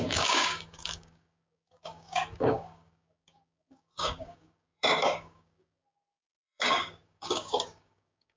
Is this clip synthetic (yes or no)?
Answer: yes